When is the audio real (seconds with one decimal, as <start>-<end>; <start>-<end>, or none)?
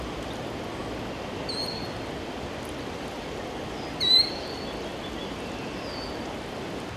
0.0-7.0